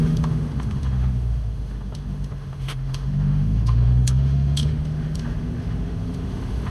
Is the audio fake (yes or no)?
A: yes